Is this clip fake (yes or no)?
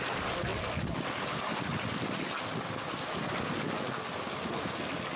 no